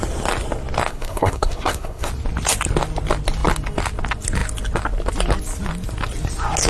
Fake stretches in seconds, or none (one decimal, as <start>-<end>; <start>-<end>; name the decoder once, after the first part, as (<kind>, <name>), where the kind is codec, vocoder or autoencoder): 0.9-2.1 (codec, SNAC)